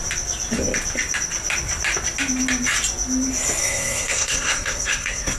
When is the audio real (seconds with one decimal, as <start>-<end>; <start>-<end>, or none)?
0.0-3.6